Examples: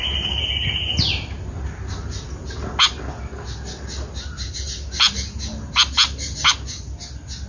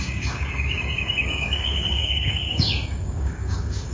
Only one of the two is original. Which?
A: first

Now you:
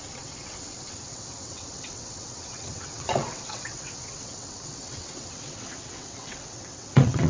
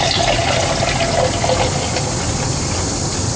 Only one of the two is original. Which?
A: second